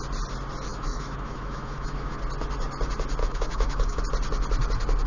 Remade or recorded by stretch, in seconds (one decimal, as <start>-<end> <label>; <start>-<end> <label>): 0.0-0.7 recorded; 0.7-2.2 remade; 2.2-3.2 recorded; 3.2-4.0 remade; 4.0-5.1 recorded

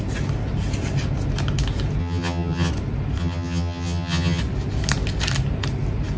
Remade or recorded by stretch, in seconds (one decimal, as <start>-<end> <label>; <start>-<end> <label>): 0.0-2.0 recorded; 2.0-2.7 remade; 2.7-3.2 recorded; 3.2-4.4 remade; 4.4-6.2 recorded

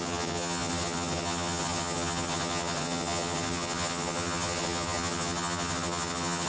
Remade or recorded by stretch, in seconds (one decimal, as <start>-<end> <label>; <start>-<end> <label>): 0.0-6.5 remade

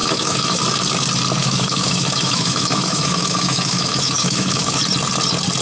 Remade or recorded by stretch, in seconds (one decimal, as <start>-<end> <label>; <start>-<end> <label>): 0.0-0.6 remade; 0.6-1.4 recorded; 1.4-4.8 remade; 4.8-5.6 recorded

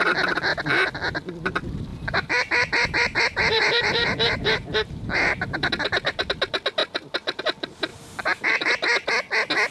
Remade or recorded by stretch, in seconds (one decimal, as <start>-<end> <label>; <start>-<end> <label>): 0.0-1.9 recorded; 1.9-5.7 remade; 5.7-6.8 recorded; 6.8-7.4 remade; 7.4-7.9 recorded; 7.9-8.7 remade; 8.7-9.7 recorded